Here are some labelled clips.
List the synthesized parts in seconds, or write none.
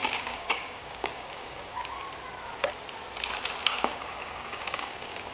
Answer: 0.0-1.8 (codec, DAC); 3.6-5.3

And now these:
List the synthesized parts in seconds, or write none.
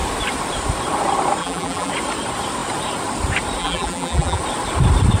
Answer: 1.4-1.9 (vocoder, BigVGAN v2); 3.6-4.4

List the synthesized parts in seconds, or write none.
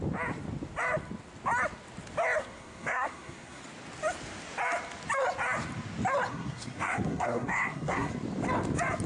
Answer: 2.4-3.6 (codec, SNAC); 6.3-8.1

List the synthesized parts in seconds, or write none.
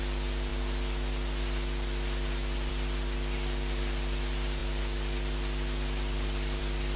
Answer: none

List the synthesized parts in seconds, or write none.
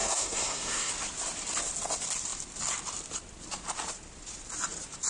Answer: 0.0-0.9 (codec, SNAC)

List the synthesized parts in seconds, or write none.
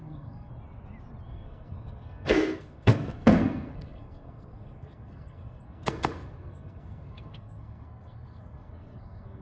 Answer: 0.0-0.5 (codec, SNAC); 1.3-9.4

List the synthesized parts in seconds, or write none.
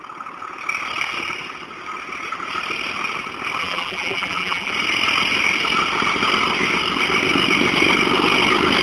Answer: 3.6-4.7 (vocoder, BigVGAN v2)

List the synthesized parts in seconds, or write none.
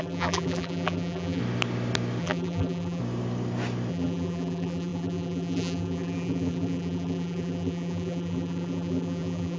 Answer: 0.0-1.4 (vocoder, BigVGAN v2); 2.2-3.0; 3.9-9.6